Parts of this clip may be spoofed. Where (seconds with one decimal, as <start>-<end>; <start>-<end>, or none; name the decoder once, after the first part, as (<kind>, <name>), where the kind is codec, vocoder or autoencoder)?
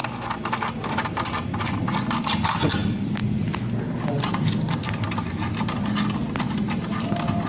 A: none